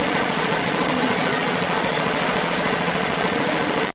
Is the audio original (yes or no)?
no